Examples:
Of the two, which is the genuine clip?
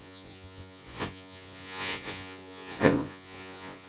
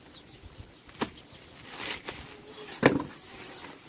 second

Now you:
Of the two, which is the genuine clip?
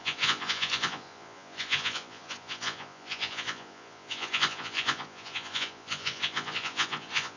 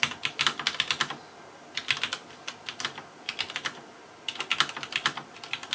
second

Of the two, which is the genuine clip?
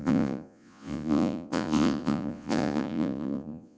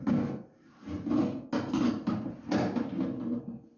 second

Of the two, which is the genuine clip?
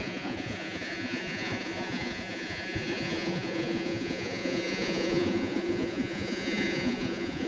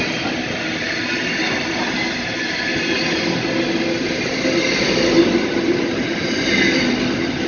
second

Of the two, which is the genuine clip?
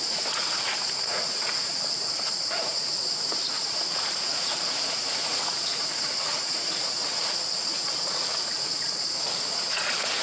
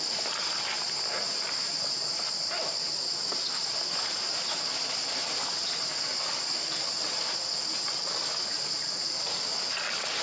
second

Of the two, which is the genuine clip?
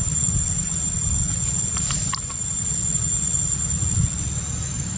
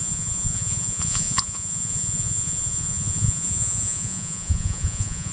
first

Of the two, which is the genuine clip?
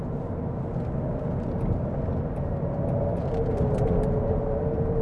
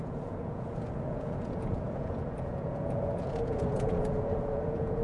first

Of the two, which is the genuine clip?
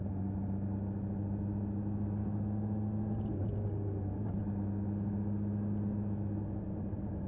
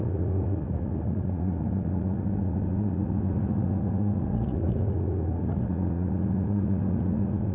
first